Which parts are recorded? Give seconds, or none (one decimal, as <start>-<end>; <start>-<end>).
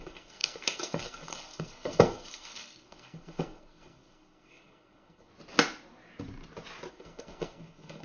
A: 5.3-6.9